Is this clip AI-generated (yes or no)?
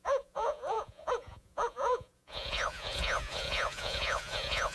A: yes